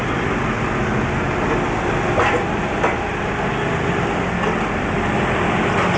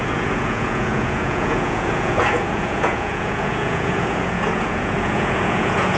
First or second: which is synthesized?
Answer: second